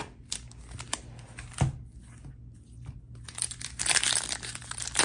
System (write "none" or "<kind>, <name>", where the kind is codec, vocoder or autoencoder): none